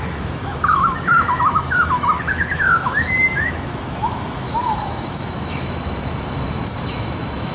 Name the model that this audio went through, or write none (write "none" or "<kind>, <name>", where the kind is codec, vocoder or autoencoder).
autoencoder, DAC-VAE